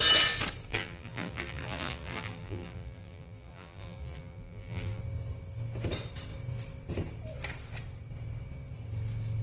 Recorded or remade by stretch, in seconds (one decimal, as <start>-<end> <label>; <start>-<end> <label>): 0.0-0.7 recorded; 0.7-5.0 remade; 5.0-9.4 recorded